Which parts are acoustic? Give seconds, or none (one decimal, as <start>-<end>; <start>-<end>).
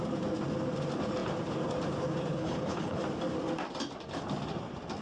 0.0-2.3; 3.0-5.0